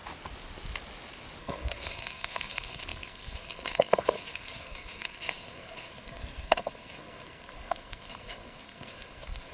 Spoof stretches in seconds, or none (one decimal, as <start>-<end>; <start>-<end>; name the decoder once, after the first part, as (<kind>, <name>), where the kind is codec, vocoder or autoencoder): 1.4-9.5 (codec, SNAC)